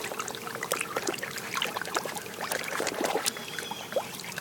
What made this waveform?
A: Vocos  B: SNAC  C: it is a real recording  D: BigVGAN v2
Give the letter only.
D